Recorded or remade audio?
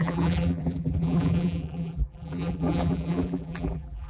remade